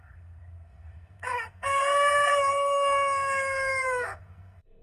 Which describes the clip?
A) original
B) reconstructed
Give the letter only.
B